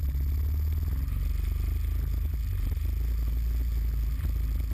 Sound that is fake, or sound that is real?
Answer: real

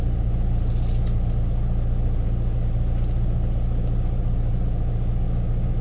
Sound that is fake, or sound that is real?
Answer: real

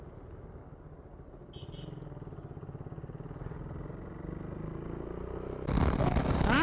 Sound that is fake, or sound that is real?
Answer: real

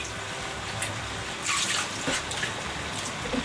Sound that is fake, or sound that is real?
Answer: real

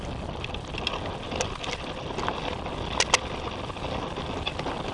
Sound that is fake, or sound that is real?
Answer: real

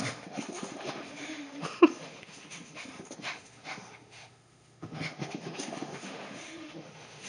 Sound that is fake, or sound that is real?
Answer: fake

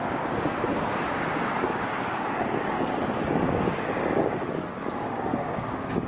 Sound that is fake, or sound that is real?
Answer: fake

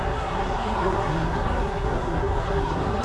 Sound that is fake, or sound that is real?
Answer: fake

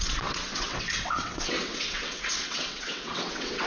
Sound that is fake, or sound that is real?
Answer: fake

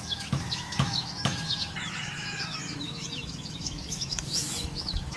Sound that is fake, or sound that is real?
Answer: fake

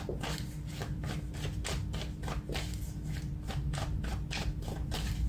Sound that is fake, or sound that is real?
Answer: real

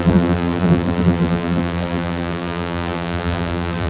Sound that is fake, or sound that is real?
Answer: fake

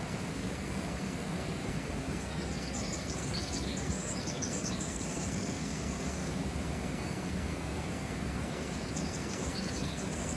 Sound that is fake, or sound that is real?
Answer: fake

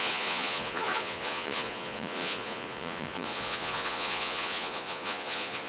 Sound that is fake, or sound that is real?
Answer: fake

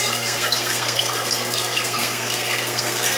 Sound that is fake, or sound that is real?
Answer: fake